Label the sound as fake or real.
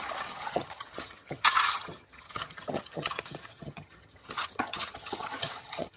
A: fake